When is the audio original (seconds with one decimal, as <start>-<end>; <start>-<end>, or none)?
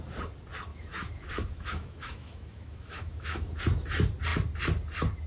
0.0-0.7; 3.6-5.3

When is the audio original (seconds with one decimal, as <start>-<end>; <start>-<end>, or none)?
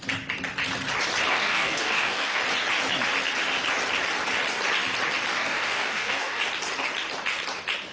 0.0-1.3; 2.4-5.3; 6.4-7.9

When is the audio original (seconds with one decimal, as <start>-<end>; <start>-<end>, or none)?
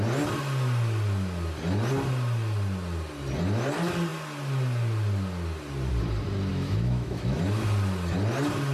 0.0-6.5; 7.4-8.7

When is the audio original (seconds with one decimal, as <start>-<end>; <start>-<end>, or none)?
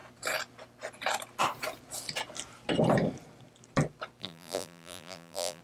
0.0-4.2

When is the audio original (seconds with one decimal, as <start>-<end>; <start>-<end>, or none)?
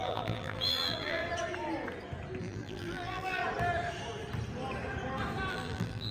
1.2-2.4; 3.4-5.5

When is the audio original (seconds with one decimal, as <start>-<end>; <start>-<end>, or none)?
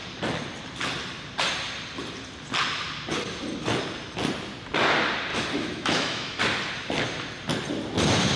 0.0-5.3; 6.4-8.4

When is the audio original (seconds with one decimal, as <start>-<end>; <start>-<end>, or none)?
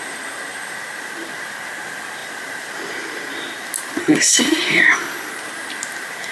0.0-4.0; 4.8-6.3